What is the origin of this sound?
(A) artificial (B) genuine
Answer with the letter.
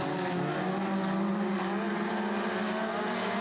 B